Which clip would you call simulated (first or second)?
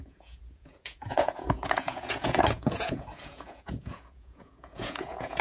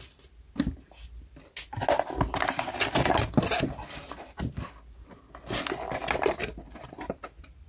first